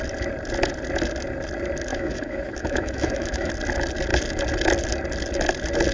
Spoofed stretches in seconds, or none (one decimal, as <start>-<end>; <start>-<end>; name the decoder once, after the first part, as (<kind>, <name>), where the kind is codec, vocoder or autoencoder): 1.9-3.5 (autoencoder, DAC-VAE)